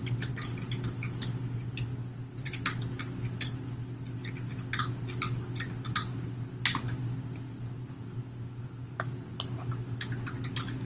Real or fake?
real